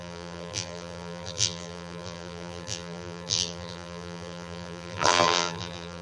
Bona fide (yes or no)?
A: no